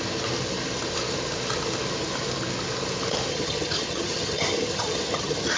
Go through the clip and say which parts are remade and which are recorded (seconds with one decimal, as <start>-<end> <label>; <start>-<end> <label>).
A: 0.0-3.3 recorded; 3.3-5.6 remade